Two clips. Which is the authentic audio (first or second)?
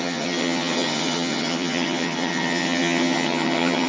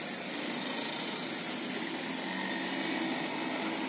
second